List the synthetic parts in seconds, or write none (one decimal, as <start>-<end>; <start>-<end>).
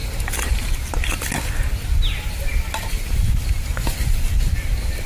0.0-0.7